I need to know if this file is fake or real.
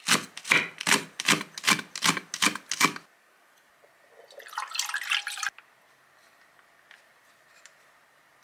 real